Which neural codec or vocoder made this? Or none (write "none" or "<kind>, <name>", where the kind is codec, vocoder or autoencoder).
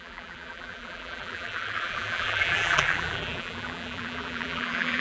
vocoder, BigVGAN v2